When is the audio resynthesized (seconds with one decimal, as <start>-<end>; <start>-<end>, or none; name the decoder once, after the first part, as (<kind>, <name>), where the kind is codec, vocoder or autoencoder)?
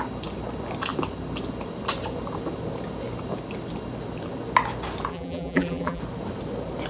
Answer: 5.1-6.0 (vocoder, BigVGAN v2)